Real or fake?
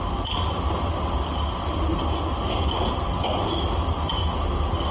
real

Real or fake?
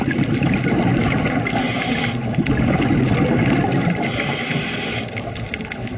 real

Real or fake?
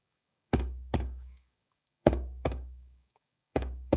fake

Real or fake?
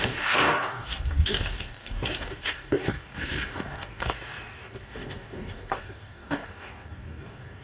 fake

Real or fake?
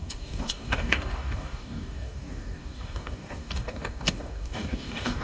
fake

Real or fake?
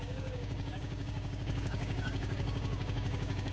fake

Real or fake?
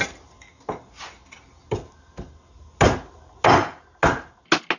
real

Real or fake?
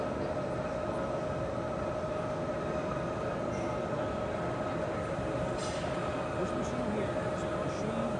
real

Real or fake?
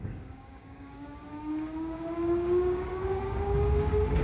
fake